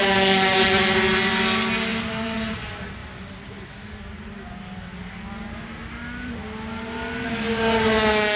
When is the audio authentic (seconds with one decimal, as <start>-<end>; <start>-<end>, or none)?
0.0-1.9; 2.6-8.4